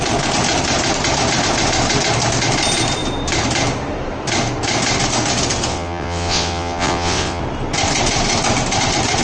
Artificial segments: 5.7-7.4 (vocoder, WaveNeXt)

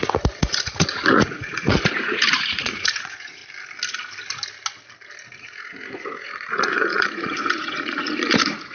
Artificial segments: 0.0-3.4 (vocoder, Vocos); 5.4-8.7